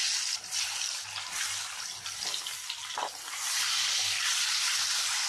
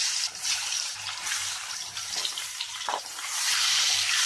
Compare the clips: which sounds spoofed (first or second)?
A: second